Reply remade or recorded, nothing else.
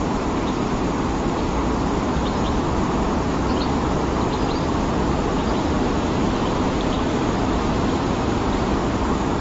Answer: remade